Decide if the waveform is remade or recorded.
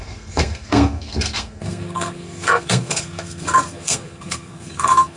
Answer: remade